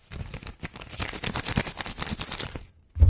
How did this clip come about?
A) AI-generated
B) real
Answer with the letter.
B